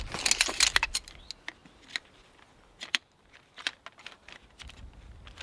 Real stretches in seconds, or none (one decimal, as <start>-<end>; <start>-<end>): 0.0-5.4